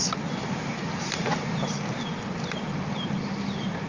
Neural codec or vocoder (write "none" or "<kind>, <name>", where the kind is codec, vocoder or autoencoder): none